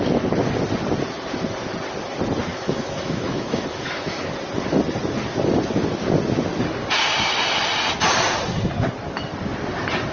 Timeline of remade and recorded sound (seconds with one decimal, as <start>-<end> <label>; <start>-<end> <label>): 0.0-2.5 recorded; 2.5-4.3 remade; 4.3-10.1 recorded